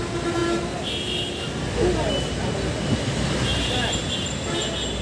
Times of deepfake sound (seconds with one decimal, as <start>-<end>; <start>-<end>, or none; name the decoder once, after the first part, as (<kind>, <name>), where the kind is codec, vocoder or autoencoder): none